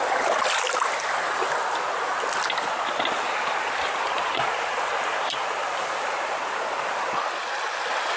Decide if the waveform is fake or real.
real